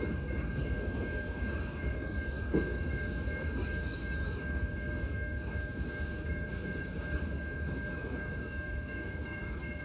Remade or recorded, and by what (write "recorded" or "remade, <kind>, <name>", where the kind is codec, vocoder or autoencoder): remade, codec, DAC